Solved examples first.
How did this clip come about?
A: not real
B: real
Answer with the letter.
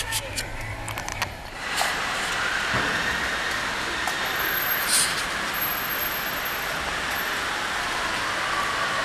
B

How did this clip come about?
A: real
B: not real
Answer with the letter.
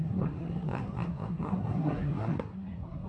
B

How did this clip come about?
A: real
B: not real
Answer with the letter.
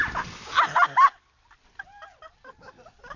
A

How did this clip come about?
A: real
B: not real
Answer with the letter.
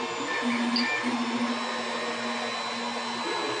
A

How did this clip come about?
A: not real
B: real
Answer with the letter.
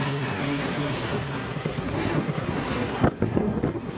A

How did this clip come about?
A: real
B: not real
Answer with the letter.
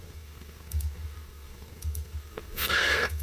B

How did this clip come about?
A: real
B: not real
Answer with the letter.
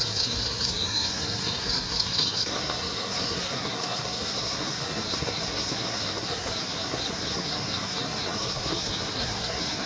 B